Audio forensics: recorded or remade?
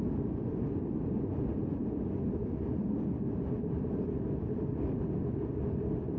remade